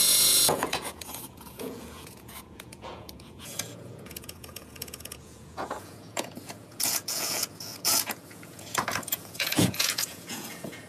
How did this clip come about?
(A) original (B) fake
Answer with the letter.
B